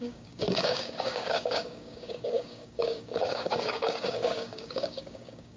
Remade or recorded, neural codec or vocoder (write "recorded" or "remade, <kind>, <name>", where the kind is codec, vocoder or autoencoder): remade, codec, DAC